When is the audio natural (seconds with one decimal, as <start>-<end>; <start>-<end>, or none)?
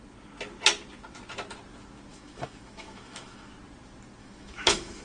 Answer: 0.0-2.1; 3.5-4.2